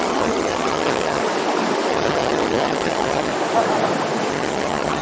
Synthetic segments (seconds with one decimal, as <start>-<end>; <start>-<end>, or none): 0.0-1.2; 1.9-3.3; 4.3-5.0